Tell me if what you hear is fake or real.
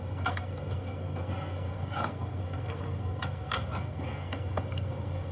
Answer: fake